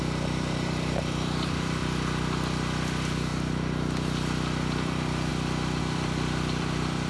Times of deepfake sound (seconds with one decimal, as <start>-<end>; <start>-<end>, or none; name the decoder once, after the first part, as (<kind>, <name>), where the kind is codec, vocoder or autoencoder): 0.0-1.8 (vocoder, BigVGAN v2); 2.9-3.3; 4.8-5.3; 5.8-7.1